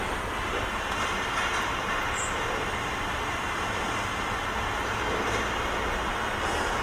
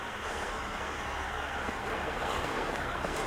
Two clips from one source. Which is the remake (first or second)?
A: second